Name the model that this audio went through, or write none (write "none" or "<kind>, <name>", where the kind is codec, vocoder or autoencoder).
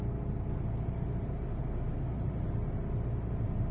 none